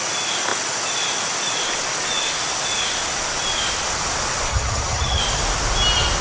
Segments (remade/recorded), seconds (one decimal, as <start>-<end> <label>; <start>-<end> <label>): 0.0-4.5 recorded; 4.5-5.2 remade; 5.2-6.2 recorded